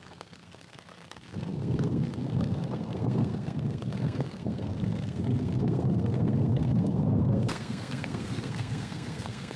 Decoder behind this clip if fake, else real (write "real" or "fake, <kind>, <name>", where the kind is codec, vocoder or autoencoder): fake, codec, SNAC